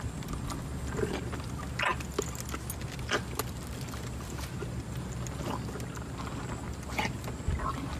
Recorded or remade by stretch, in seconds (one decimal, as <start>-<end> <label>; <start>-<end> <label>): 0.0-8.0 recorded